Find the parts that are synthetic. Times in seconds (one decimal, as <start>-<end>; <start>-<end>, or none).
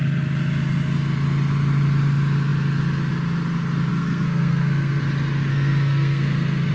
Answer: 3.9-5.0; 5.5-6.7